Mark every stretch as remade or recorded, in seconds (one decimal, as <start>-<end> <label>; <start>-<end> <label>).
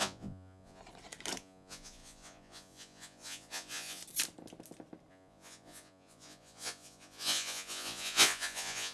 0.0-0.8 remade; 0.8-1.4 recorded; 1.4-4.0 remade; 4.0-5.1 recorded; 5.1-8.9 remade